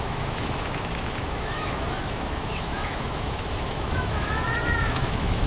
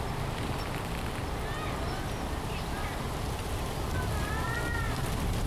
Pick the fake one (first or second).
first